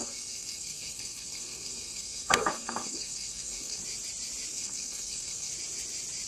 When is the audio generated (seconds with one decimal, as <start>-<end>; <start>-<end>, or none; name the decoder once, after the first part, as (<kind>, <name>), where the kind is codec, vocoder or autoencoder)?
0.0-3.8 (codec, SNAC); 4.5-5.5